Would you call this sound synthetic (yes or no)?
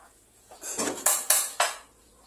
yes